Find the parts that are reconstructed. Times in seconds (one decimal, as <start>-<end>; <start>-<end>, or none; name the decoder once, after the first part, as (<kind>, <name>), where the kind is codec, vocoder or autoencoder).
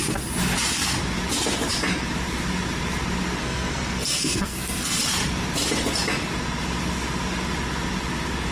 3.4-5.0 (codec, SNAC)